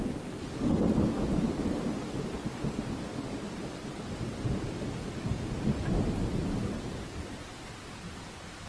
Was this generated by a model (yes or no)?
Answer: no